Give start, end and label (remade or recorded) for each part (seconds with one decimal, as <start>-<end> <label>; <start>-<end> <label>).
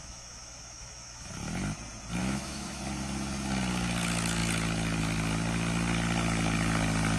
0.0-1.3 remade; 1.3-2.2 recorded; 2.2-2.8 remade; 2.8-7.2 recorded